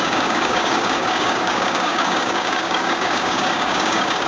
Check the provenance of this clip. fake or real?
fake